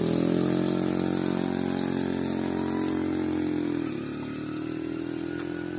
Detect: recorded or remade recorded